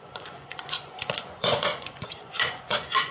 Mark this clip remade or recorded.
remade